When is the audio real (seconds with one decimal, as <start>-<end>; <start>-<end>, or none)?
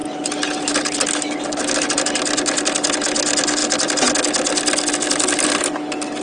0.0-6.2